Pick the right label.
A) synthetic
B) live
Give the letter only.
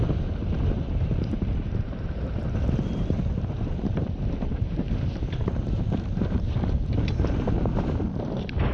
A